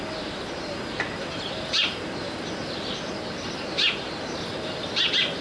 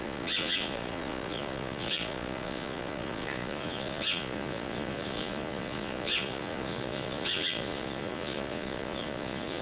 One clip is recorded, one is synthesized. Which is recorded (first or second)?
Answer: first